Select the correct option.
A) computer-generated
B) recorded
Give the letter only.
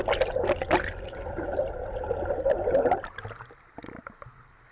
B